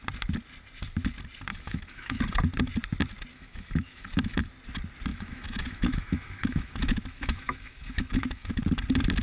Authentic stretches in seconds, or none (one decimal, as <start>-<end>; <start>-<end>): 0.0-1.5; 2.2-3.3; 4.5-5.1; 8.6-9.2